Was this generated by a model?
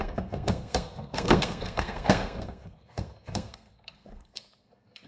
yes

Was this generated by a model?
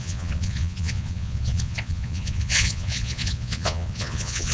yes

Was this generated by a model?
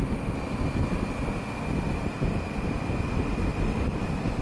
no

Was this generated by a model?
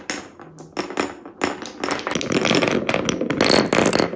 no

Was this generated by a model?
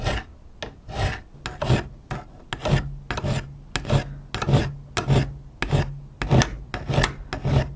no